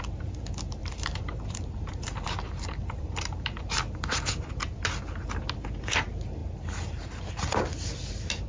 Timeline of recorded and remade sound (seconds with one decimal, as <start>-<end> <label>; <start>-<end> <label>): 0.0-0.8 recorded; 0.8-4.3 remade; 4.3-6.4 recorded; 6.4-7.3 remade; 7.3-8.5 recorded